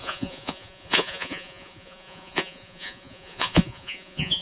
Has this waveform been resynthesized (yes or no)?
yes